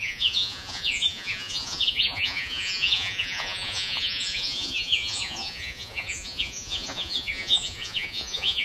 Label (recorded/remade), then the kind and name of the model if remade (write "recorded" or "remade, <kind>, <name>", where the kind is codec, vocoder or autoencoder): remade, vocoder, Vocos